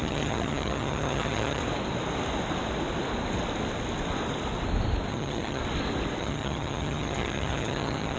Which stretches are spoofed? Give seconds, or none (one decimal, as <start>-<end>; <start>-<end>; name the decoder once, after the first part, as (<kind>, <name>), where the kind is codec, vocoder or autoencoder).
0.0-1.6 (vocoder, HiFi-GAN); 5.1-5.6; 6.2-8.2